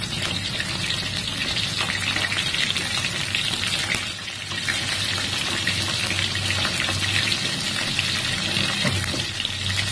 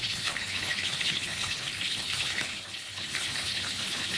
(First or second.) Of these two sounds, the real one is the first